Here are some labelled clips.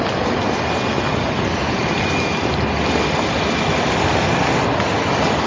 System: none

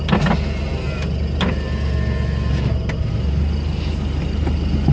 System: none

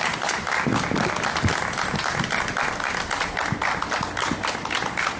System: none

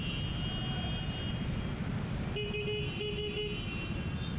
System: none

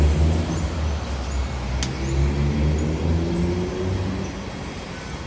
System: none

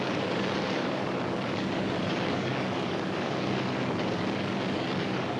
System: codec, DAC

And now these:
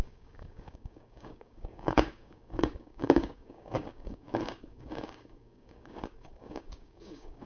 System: codec, DAC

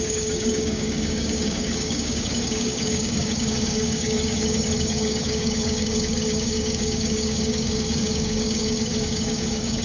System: codec, DAC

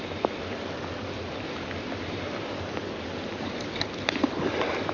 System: none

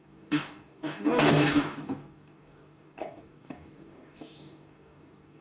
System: codec, DAC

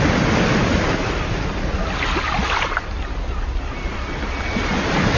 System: none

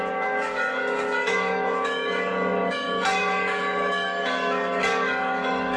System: codec, DAC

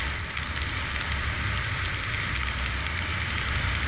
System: none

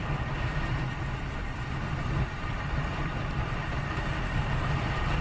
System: none